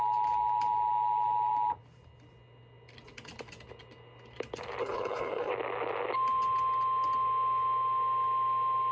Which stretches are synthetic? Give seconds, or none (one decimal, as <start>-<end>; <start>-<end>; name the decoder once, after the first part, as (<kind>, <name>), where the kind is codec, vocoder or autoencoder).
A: 4.8-5.5 (codec, HILCodec)